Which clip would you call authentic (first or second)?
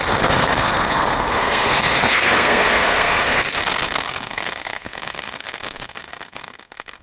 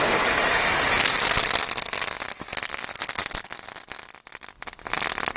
second